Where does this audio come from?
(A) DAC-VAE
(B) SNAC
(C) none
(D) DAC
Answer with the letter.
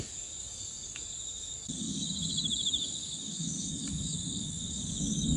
D